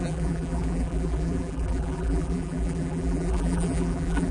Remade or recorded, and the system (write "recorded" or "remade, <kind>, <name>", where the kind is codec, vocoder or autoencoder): remade, vocoder, BigVGAN v2